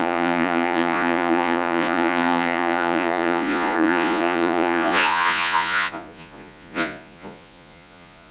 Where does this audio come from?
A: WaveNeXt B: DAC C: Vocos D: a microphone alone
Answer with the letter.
C